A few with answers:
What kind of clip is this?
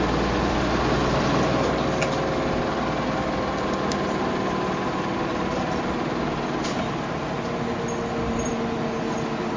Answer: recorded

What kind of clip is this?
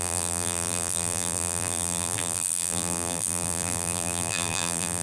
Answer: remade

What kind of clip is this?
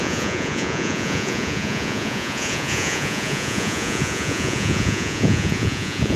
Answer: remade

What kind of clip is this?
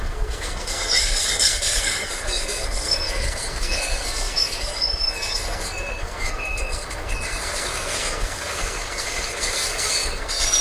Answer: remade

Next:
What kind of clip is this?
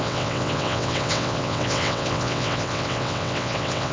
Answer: remade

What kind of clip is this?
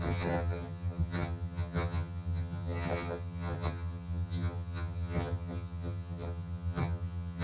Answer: remade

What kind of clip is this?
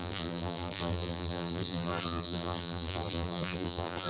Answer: remade